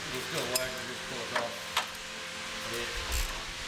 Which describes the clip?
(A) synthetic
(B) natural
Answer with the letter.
B